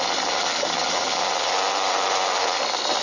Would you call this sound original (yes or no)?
yes